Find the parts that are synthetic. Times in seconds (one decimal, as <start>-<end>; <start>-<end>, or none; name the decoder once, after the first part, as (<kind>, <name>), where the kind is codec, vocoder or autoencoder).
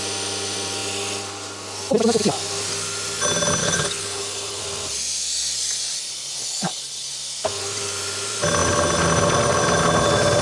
3.6-4.6 (codec, HILCodec); 6.4-7.1